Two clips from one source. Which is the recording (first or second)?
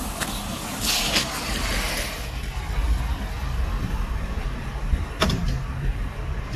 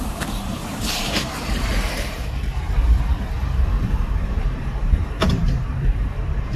first